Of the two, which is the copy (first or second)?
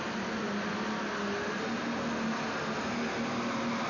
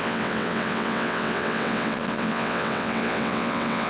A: second